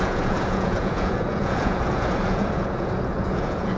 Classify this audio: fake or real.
fake